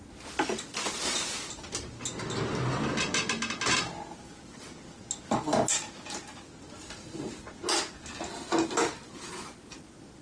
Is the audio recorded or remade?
recorded